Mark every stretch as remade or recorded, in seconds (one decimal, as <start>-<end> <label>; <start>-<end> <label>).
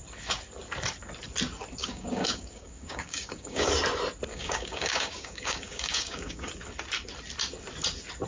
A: 0.0-1.8 recorded; 1.8-3.7 remade; 3.7-4.3 recorded; 4.3-6.5 remade; 6.5-8.3 recorded